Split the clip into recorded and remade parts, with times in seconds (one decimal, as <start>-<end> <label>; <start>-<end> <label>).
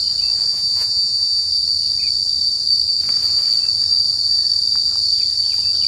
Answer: 0.0-0.5 recorded; 0.5-1.5 remade; 1.5-5.9 recorded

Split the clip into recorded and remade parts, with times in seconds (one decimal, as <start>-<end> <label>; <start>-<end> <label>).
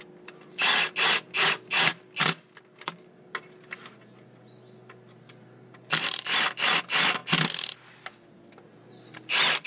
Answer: 0.0-9.7 recorded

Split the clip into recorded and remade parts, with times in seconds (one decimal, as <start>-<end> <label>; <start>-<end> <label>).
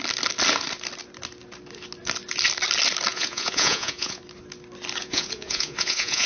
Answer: 0.0-3.1 recorded; 3.1-4.2 remade; 4.2-5.0 recorded; 5.0-6.3 remade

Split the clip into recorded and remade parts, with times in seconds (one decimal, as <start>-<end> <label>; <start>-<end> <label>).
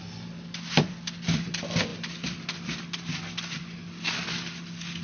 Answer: 0.0-5.0 recorded